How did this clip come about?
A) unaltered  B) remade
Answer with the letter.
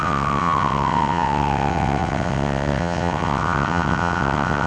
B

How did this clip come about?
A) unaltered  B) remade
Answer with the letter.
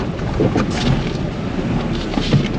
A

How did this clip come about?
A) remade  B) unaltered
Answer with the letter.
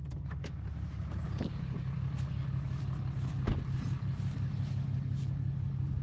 B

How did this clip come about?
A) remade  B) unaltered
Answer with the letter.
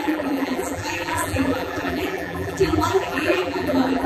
A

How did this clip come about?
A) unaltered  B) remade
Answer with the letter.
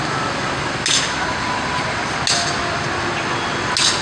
A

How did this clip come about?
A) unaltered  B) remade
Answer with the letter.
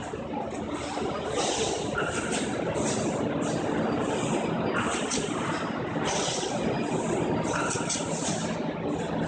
A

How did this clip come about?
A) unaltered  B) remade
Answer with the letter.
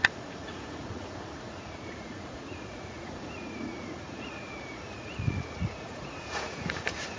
B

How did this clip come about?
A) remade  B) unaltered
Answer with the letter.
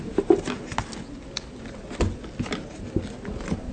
B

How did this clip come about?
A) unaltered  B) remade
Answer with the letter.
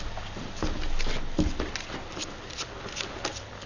A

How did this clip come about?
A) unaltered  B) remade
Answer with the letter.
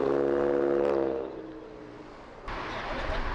A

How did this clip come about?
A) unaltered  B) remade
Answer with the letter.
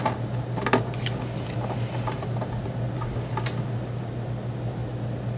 A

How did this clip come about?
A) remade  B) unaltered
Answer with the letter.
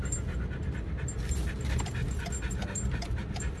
B